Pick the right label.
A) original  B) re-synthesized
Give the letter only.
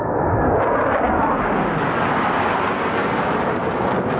A